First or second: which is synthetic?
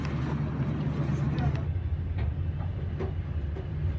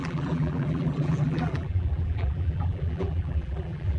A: second